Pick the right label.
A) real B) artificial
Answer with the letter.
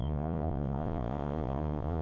B